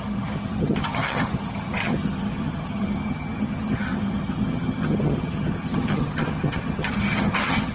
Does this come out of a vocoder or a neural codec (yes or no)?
yes